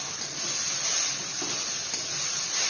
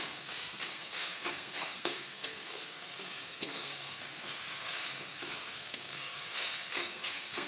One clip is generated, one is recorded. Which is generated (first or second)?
second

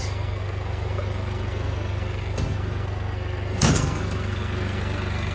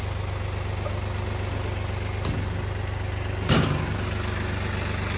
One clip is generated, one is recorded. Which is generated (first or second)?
first